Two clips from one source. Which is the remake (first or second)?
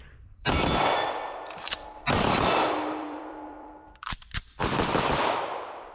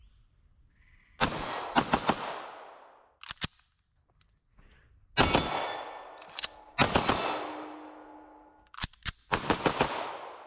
first